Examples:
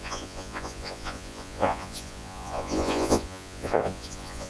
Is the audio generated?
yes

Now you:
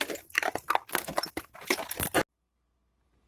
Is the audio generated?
no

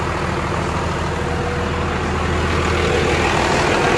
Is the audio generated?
no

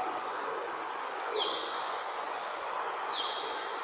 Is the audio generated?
yes